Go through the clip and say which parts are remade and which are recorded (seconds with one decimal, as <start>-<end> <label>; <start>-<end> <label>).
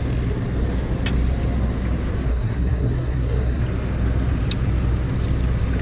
0.0-2.3 recorded; 2.3-3.6 remade; 3.6-5.8 recorded